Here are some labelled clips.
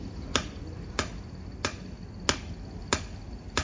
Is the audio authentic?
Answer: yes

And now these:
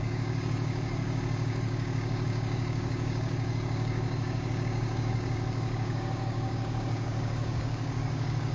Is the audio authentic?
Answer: no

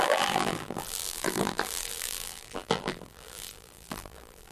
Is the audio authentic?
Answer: no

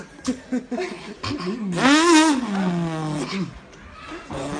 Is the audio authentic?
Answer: yes